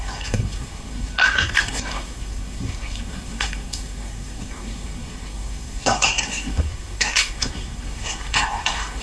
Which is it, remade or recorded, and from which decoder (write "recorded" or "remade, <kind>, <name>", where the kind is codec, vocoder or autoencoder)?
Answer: remade, codec, SNAC